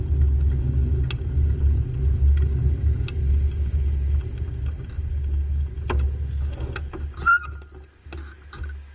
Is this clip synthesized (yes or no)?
no